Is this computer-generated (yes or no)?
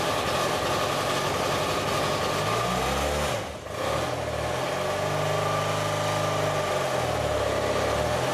no